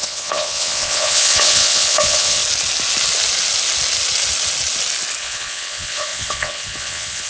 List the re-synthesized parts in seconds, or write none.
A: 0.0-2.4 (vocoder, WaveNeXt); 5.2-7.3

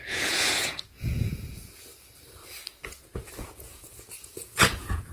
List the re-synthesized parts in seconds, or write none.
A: 0.0-1.9 (vocoder, Vocos); 2.7-5.1

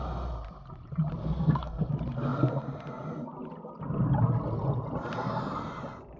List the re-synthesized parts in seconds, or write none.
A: 1.2-1.9 (codec, SNAC)

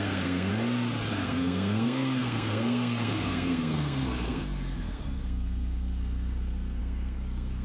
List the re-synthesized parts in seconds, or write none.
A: 0.0-0.5 (codec, SNAC); 1.1-7.6